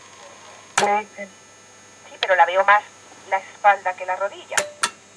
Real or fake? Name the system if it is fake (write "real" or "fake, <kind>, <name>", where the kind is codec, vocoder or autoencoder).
real